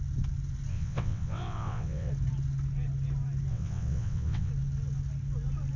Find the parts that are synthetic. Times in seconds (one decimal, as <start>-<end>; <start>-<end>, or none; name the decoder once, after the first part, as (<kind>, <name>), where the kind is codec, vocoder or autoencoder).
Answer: 0.7-2.1 (vocoder, WaveNeXt); 3.5-4.5